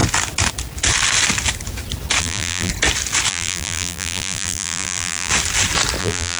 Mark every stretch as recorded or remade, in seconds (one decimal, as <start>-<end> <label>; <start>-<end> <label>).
0.0-2.2 recorded; 2.2-2.7 remade; 2.7-3.3 recorded; 3.3-5.3 remade; 5.3-6.0 recorded; 6.0-6.4 remade